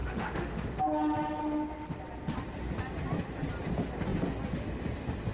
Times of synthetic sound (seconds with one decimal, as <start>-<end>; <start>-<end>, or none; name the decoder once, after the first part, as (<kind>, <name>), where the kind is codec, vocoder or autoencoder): 0.0-0.8 (autoencoder, DAC-VAE); 1.4-2.0